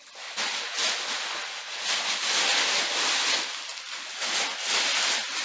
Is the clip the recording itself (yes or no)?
yes